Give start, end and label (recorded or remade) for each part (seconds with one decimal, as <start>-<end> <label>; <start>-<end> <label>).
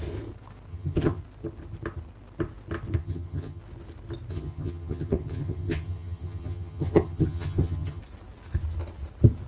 0.0-0.7 recorded; 0.7-1.2 remade; 1.2-3.0 recorded; 3.0-3.6 remade; 3.6-4.3 recorded; 4.3-8.0 remade; 8.0-9.5 recorded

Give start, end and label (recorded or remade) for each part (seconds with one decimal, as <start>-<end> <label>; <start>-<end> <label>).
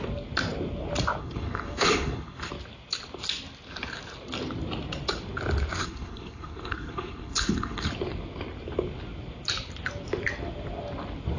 0.0-1.2 recorded; 1.2-2.5 remade; 2.5-5.8 recorded; 5.8-7.9 remade; 7.9-11.4 recorded